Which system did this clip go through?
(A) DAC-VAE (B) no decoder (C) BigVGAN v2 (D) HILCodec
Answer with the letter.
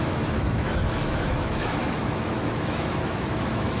A